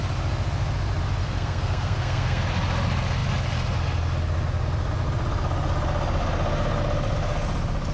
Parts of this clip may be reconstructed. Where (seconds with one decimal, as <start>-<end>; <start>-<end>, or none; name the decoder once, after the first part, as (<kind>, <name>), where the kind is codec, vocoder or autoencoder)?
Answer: 1.2-2.4 (codec, SNAC)

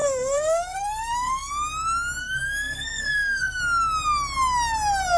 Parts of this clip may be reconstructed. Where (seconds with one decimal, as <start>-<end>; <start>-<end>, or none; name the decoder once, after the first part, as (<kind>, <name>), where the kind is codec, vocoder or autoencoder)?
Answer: 0.0-1.5 (codec, SNAC); 2.2-3.6

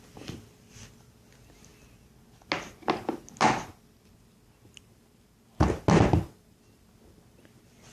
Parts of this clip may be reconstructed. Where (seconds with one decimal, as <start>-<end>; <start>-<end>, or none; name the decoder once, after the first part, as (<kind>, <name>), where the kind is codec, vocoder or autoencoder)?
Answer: none

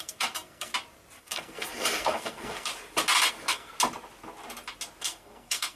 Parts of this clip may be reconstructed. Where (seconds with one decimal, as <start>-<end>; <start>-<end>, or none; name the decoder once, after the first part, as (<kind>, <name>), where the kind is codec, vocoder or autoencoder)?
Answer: 0.0-0.7 (codec, SNAC); 1.2-2.7; 3.3-3.7; 5.0-5.8

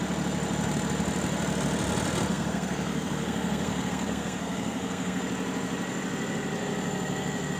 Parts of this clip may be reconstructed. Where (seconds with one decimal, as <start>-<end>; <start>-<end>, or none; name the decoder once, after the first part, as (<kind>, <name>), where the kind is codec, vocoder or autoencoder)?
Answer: 2.3-5.2 (codec, SNAC)

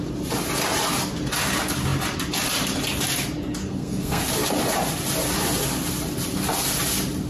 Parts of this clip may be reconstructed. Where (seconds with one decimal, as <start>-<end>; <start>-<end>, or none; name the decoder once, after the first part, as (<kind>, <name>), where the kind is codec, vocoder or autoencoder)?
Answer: 3.6-4.2 (codec, SNAC)

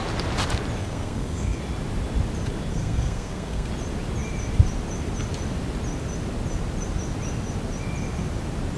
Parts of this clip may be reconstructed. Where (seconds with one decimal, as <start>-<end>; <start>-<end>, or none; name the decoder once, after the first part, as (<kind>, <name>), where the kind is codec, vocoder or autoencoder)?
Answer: 0.8-1.6 (codec, SNAC); 2.7-3.7

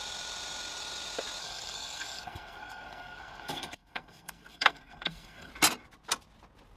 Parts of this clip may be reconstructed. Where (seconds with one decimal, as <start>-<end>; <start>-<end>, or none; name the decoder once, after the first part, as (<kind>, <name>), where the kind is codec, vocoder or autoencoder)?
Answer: 1.4-5.5 (codec, SNAC)